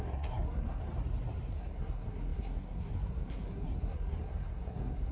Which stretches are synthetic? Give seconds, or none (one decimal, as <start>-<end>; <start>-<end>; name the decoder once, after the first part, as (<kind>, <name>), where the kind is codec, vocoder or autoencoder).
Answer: 0.0-0.8 (codec, SNAC); 1.5-5.1